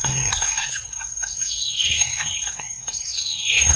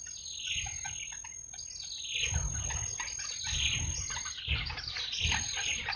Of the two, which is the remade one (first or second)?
first